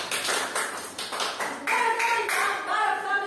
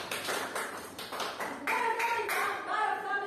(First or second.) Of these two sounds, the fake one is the second